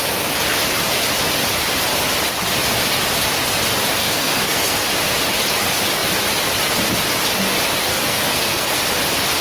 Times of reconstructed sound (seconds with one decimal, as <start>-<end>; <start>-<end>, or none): 4.0-4.9; 7.9-8.8